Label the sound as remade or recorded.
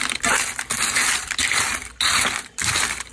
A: recorded